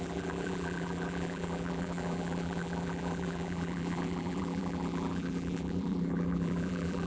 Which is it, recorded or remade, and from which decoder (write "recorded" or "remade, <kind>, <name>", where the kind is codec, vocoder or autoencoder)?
remade, vocoder, BigVGAN v2